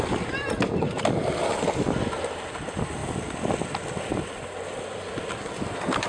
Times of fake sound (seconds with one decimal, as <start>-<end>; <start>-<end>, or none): none